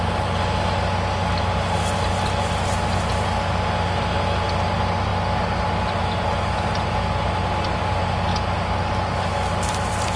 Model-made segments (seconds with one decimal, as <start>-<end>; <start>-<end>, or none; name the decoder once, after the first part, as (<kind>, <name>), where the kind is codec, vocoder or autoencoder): none